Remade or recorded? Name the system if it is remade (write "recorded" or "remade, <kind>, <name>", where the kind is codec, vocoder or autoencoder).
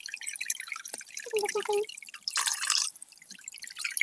remade, vocoder, BigVGAN v2